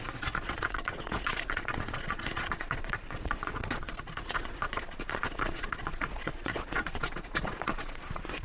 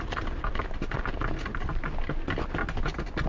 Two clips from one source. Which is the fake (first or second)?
first